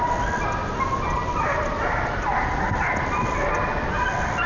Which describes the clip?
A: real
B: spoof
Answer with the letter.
A